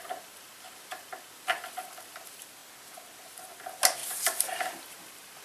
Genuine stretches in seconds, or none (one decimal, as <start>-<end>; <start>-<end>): 2.6-3.3; 4.0-4.5